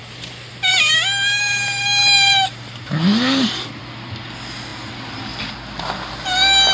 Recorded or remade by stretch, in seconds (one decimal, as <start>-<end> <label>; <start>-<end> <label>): 0.0-0.7 remade; 0.7-2.0 recorded; 2.0-3.8 remade; 3.8-6.7 recorded